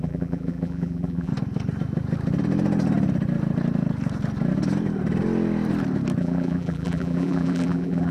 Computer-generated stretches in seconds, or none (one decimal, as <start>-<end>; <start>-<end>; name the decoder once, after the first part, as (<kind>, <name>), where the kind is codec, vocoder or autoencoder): 0.0-1.3 (vocoder, BigVGAN v2); 6.2-8.1